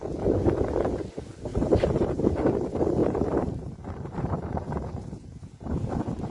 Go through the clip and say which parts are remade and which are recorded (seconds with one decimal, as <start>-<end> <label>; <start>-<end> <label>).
0.0-1.5 recorded; 1.5-2.3 remade; 2.3-3.0 recorded; 3.0-5.7 remade; 5.7-6.3 recorded